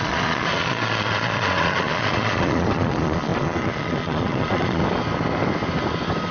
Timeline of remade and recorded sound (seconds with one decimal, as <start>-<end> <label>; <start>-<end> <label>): 0.0-4.8 remade; 4.8-6.3 recorded

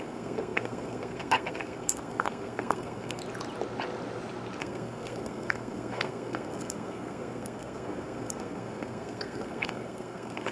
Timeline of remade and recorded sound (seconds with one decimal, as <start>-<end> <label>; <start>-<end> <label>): 0.0-3.2 remade; 3.2-4.6 recorded; 4.6-10.5 remade

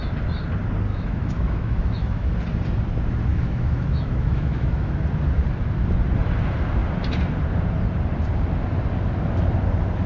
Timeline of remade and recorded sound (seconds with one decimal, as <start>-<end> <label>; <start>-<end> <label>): 0.0-0.9 recorded; 0.9-2.3 remade; 2.3-3.3 recorded; 3.3-4.9 remade; 4.9-10.1 recorded

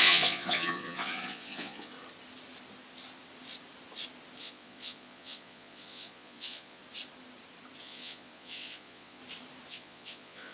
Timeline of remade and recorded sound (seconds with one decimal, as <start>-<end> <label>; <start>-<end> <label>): 0.0-1.9 remade; 1.9-4.4 recorded; 4.4-6.8 remade; 6.8-7.8 recorded; 7.8-9.2 remade; 9.2-9.7 recorded; 9.7-10.5 remade

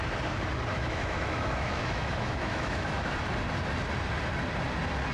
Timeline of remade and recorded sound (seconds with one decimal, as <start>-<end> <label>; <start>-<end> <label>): 0.0-0.7 recorded; 0.7-3.0 remade; 3.0-5.1 recorded

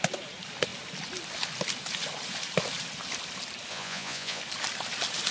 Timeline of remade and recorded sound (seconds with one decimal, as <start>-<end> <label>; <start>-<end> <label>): 0.0-3.7 recorded; 3.7-4.4 remade; 4.4-5.3 recorded

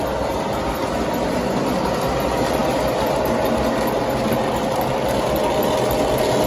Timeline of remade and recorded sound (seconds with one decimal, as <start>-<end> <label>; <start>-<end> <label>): 0.0-6.5 recorded